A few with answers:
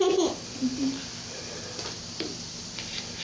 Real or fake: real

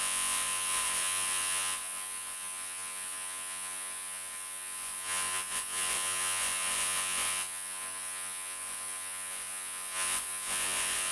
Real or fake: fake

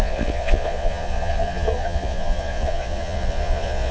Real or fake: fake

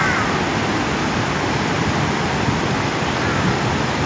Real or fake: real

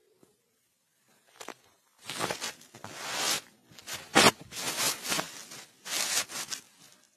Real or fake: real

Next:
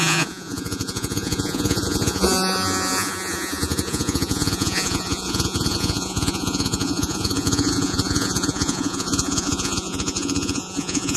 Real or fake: fake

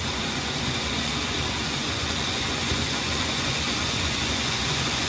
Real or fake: fake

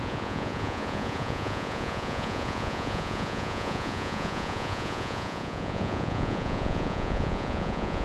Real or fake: fake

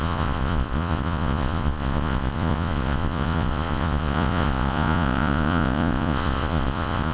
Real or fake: fake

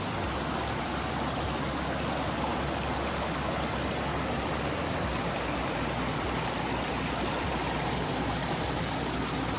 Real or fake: real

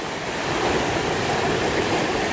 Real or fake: real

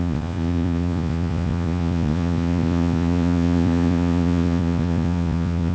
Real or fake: fake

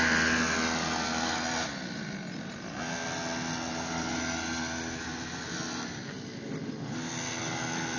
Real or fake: real